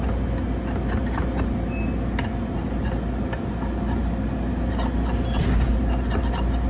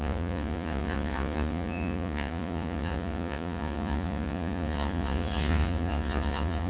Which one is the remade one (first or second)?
second